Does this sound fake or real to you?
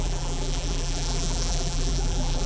fake